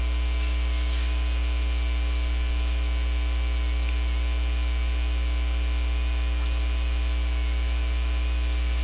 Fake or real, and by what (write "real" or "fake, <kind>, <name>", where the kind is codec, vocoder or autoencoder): real